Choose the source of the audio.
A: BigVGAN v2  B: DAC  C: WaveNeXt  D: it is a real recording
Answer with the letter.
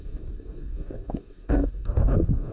B